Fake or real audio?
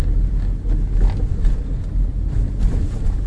real